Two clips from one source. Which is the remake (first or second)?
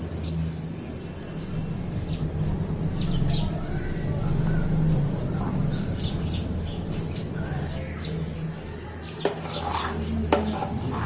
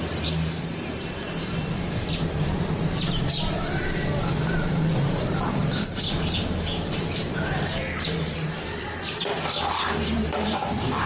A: second